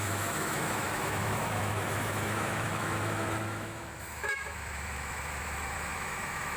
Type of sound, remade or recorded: remade